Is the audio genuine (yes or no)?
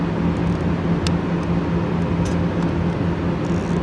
yes